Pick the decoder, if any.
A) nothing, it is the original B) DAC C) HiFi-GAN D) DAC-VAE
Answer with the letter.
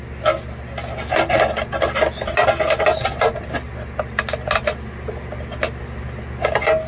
A